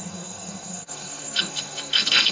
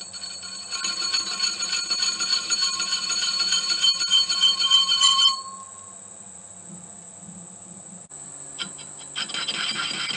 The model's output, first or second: first